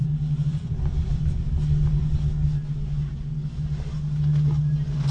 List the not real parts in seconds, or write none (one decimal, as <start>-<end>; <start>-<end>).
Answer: 0.0-1.3